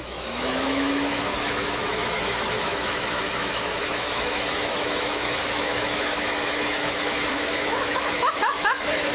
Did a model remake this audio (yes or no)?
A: yes